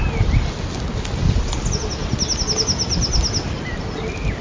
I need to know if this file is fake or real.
real